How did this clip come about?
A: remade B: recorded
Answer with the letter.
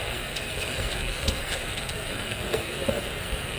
A